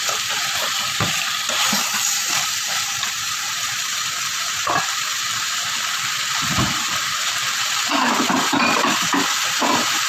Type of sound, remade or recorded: remade